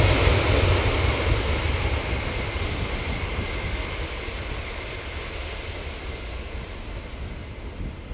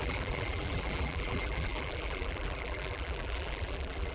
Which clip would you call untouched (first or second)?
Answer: first